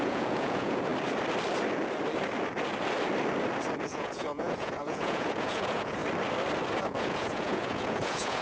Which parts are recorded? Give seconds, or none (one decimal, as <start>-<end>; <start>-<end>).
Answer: 0.9-3.8; 6.0-6.8